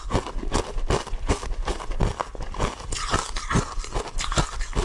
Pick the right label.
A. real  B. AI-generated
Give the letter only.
A